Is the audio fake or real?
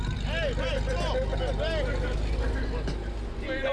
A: real